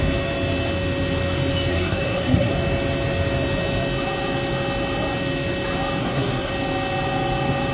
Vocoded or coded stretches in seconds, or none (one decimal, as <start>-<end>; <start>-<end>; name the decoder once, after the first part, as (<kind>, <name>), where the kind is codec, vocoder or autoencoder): 1.7-2.5 (codec, SNAC); 6.0-6.5